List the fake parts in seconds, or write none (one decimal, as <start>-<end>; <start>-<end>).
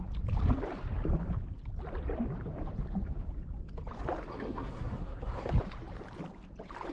4.3-5.5